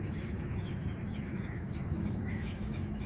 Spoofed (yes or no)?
yes